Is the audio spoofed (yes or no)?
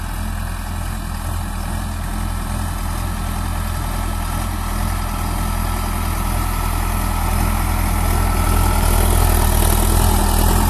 no